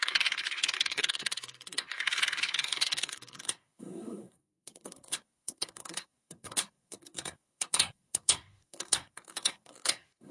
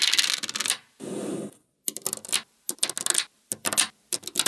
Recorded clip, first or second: second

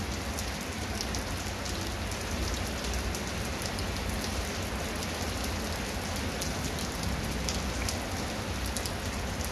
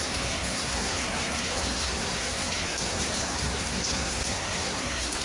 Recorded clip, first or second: first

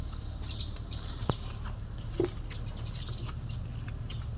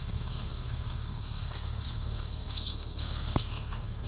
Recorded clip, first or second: first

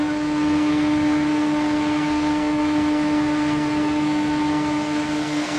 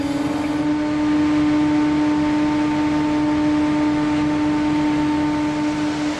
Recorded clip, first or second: second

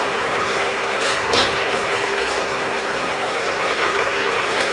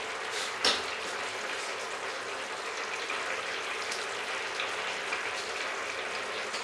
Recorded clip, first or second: second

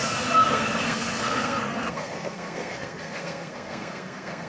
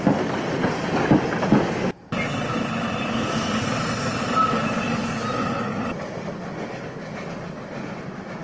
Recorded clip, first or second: second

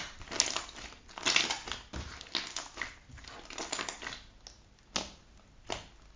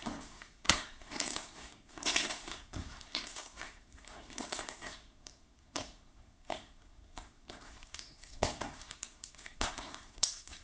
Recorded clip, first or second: first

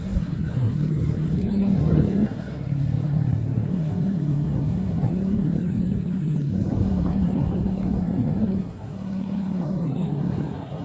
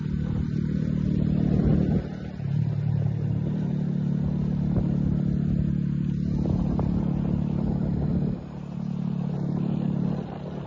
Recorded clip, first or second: second